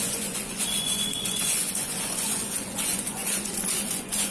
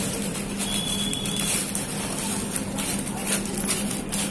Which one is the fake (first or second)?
first